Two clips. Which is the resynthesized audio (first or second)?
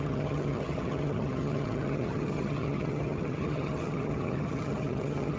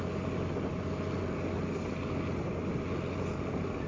first